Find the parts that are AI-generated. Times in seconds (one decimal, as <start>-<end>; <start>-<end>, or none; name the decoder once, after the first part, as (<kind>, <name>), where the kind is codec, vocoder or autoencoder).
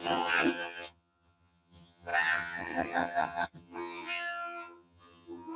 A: 0.0-5.6 (vocoder, HiFi-GAN)